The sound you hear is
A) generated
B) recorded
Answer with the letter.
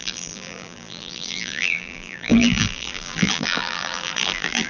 A